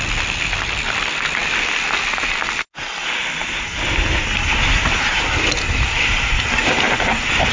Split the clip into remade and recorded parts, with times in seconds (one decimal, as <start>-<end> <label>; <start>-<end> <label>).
0.0-7.5 recorded